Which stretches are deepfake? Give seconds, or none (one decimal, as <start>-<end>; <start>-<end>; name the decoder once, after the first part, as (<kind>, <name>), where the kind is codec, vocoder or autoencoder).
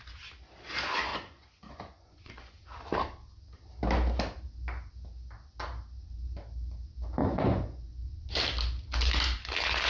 1.1-2.6 (vocoder, Vocos); 7.2-8.1